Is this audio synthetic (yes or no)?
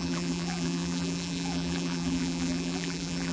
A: yes